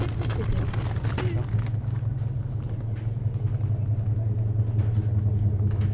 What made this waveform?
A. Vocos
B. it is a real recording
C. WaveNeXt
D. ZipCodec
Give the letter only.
B